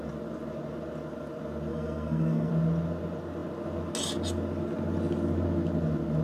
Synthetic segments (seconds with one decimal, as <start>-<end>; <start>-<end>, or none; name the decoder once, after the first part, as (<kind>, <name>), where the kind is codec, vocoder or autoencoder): 1.7-2.5 (codec, SNAC)